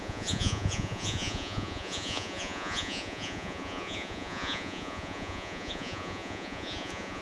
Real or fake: fake